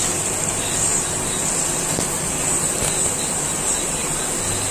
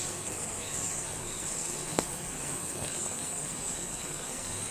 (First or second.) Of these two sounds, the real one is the first